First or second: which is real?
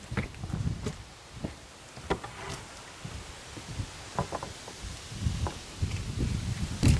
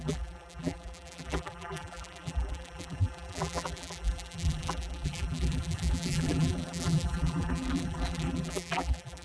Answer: first